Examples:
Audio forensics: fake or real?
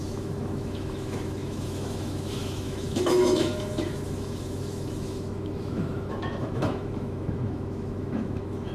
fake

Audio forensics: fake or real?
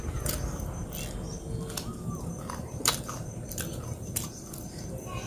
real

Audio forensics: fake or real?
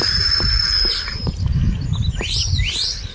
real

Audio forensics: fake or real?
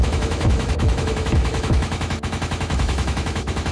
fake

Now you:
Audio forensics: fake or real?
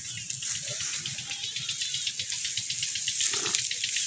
real